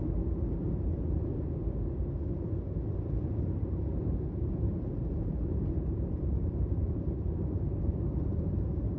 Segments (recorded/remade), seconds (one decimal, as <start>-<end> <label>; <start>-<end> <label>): 0.0-1.6 remade; 1.6-2.9 recorded; 2.9-9.0 remade